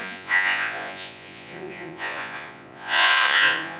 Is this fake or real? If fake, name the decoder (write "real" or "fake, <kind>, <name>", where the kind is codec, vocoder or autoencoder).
fake, vocoder, Vocos